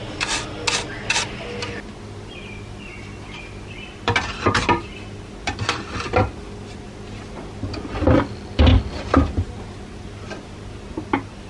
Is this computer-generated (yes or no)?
no